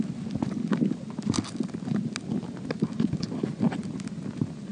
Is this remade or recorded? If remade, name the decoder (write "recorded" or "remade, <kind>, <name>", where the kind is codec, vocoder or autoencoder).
recorded